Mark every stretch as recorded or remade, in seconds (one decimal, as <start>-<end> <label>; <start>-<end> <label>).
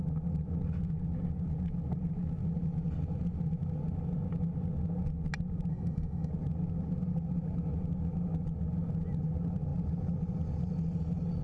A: 0.0-5.7 recorded; 5.7-6.3 remade; 6.3-11.4 recorded